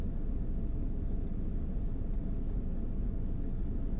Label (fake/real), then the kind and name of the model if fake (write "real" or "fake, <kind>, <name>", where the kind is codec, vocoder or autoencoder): real